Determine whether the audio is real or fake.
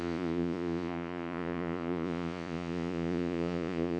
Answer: fake